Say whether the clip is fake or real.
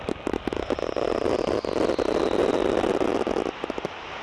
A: real